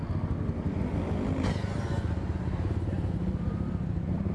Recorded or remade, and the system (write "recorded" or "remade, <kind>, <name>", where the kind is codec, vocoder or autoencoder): recorded